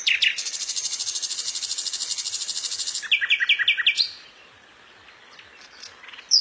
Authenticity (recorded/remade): recorded